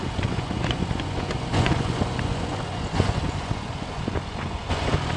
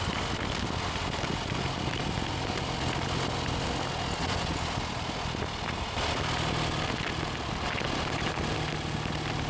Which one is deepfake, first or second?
first